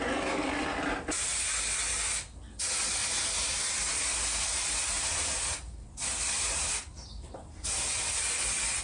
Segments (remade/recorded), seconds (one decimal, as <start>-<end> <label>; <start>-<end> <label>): 0.0-3.0 recorded; 3.0-7.8 remade; 7.8-8.8 recorded